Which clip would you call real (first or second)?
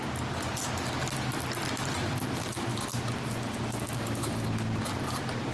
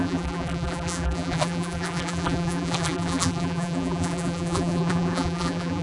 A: first